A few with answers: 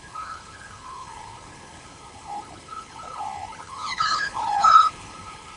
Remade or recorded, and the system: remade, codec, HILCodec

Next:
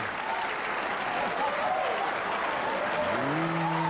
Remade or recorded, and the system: recorded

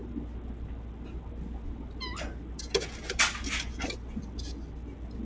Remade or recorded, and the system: recorded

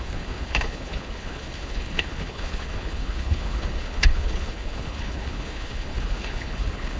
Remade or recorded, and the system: remade, codec, HILCodec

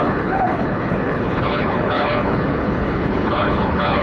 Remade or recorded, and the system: remade, codec, HILCodec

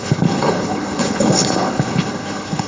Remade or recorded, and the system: remade, codec, HILCodec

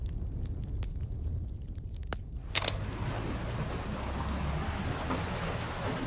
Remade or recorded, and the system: recorded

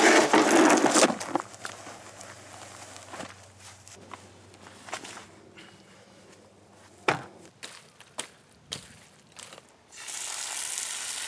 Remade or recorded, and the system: recorded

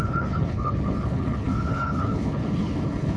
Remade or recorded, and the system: remade, codec, HILCodec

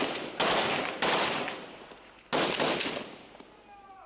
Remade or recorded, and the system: recorded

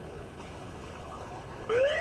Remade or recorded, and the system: remade, codec, HILCodec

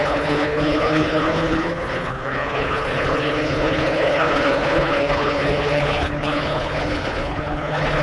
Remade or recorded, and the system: remade, codec, HILCodec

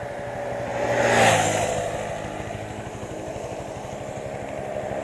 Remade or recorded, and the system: recorded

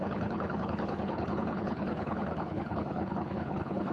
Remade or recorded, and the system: remade, codec, HILCodec